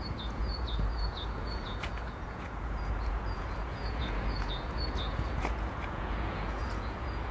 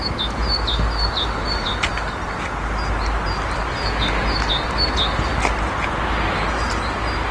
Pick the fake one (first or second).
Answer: first